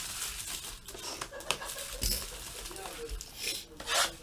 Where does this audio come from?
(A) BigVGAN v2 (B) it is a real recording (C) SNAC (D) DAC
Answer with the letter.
B